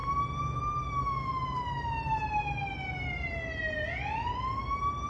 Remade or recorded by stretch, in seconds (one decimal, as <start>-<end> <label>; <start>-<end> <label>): 0.0-5.1 recorded